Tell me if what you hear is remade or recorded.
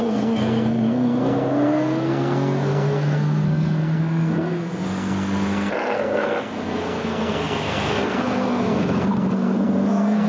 remade